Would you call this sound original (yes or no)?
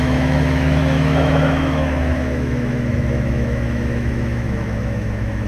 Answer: no